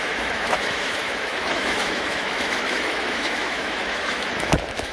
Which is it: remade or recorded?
remade